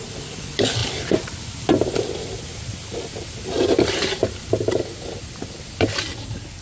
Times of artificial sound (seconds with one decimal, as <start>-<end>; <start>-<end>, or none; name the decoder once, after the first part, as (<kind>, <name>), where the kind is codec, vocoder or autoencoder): none